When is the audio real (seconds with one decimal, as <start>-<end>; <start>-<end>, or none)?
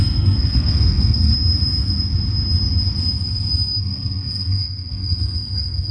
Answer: 1.3-3.8